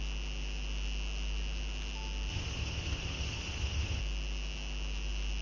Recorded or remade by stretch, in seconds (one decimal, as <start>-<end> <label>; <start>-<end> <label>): 0.0-2.3 recorded; 2.3-4.0 remade; 4.0-5.4 recorded